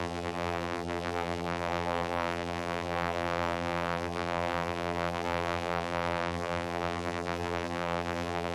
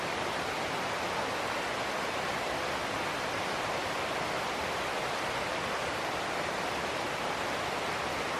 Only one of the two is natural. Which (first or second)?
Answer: second